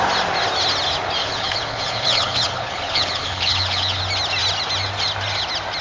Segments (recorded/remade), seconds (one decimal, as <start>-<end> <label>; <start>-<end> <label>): 0.0-1.2 recorded; 1.2-4.0 remade; 4.0-5.8 recorded